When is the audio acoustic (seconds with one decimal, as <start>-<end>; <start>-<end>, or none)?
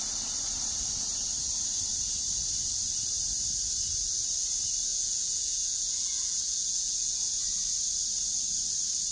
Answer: 0.0-4.9; 7.4-9.1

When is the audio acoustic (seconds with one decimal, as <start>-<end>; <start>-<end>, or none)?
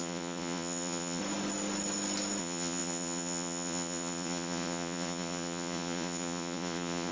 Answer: 1.2-2.4